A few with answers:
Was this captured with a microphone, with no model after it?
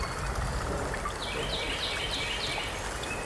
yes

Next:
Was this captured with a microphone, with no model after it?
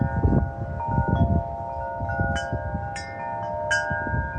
yes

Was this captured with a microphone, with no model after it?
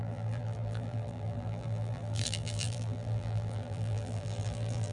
no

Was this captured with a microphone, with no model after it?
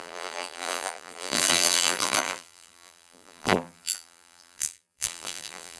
no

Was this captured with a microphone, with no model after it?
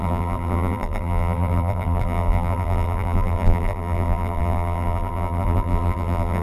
no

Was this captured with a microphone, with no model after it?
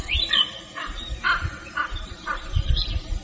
no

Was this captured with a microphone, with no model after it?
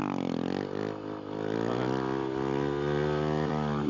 yes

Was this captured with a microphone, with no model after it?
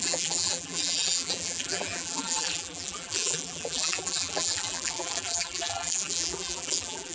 no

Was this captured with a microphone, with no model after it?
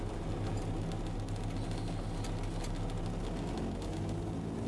yes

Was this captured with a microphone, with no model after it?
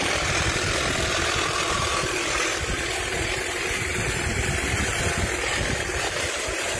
no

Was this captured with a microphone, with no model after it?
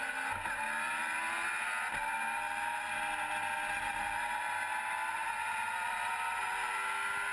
yes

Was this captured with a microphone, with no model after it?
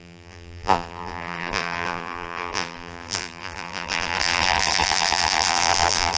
no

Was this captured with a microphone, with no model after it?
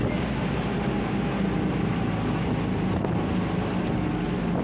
yes